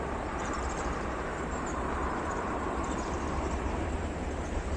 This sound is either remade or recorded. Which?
remade